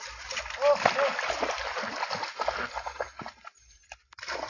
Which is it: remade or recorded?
recorded